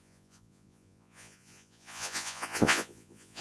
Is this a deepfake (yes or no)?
yes